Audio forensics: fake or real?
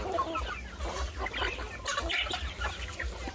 real